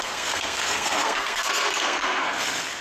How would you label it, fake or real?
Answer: fake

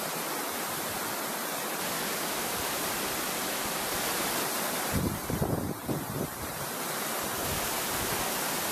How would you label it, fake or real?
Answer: real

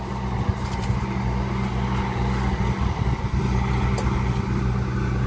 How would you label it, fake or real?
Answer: real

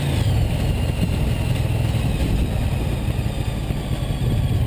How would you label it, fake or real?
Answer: real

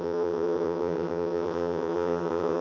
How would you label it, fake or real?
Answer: fake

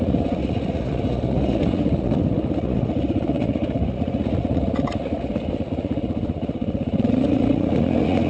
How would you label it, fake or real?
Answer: fake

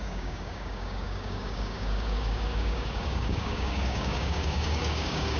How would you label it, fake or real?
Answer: fake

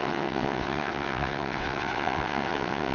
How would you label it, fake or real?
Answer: fake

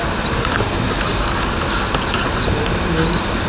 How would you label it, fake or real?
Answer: real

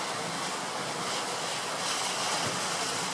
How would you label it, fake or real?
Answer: real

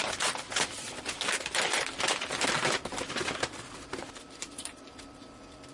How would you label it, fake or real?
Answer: real